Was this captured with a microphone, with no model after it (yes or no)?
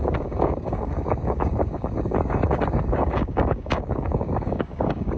no